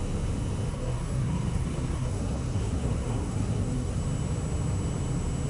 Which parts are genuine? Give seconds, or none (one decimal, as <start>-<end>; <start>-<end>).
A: 0.0-0.7; 4.0-5.5